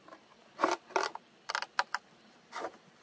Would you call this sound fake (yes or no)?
no